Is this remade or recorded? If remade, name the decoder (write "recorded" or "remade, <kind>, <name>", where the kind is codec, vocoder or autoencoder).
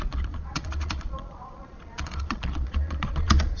remade, vocoder, Vocos